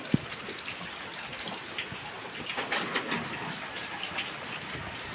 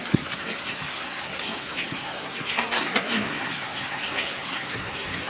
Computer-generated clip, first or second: second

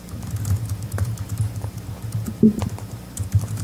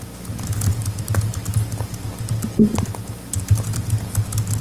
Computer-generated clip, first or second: first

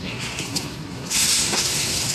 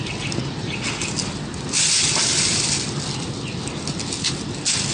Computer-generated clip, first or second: first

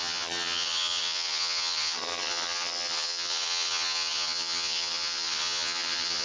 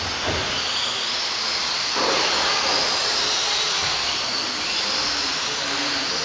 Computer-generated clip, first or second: first